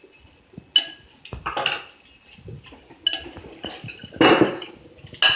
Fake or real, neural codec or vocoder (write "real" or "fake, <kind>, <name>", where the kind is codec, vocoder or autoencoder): real